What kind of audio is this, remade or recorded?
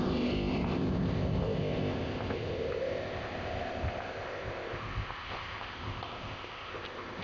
remade